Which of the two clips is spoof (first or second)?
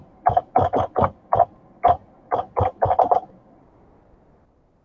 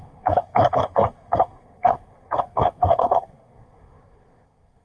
second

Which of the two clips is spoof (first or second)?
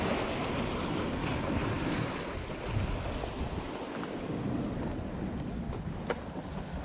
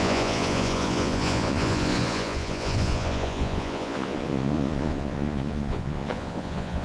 second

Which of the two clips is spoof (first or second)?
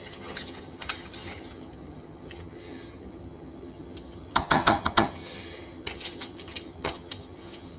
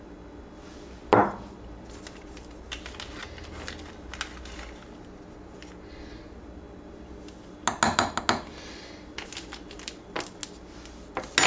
first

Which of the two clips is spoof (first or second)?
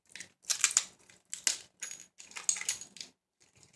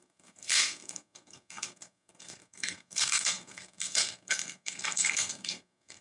second